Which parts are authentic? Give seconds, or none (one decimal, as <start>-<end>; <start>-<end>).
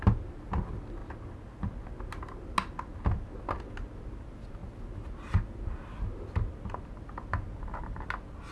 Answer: 0.0-8.5